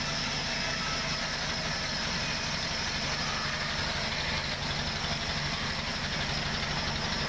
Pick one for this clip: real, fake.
real